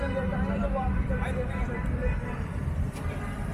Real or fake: fake